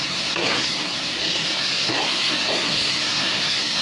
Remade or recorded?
remade